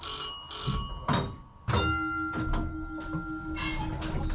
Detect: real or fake real